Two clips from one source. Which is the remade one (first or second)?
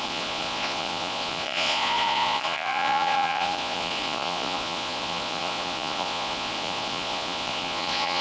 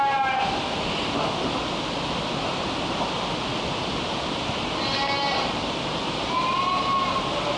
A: first